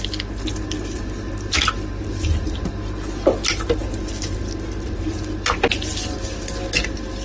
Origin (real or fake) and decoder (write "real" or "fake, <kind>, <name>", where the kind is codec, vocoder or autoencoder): real